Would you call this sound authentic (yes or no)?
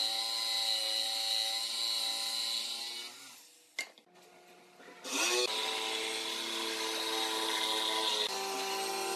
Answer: yes